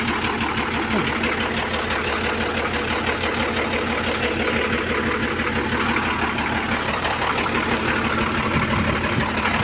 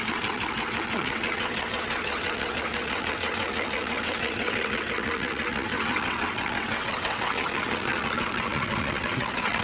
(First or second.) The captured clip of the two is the first